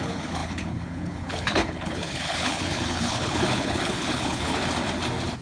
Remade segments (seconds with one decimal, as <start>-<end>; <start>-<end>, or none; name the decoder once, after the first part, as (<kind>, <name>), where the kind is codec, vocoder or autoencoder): 0.0-4.6 (codec, HILCodec)